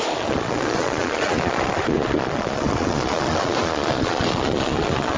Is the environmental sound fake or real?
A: fake